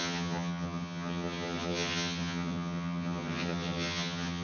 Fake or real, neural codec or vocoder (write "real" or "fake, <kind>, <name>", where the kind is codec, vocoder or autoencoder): fake, vocoder, HiFi-GAN